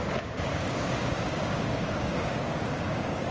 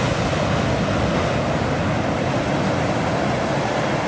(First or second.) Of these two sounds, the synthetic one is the first